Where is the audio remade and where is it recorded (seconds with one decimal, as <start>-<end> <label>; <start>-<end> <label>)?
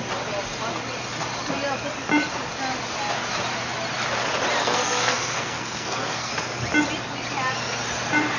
0.0-4.6 recorded; 4.6-6.3 remade; 6.3-8.4 recorded